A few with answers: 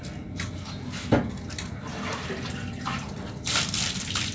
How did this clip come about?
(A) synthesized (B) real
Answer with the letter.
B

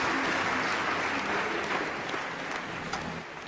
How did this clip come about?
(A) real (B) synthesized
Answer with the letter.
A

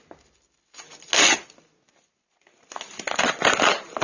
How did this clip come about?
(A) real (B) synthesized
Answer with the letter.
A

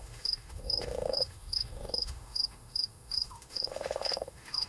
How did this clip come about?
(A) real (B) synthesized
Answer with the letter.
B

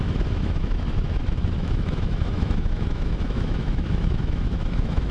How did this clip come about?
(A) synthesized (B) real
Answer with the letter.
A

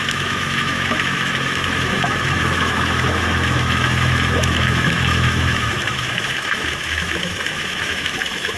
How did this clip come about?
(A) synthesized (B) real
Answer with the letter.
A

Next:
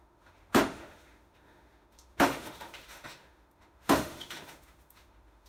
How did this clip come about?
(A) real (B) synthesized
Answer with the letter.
B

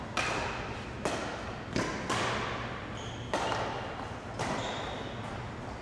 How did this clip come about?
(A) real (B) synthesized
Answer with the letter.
A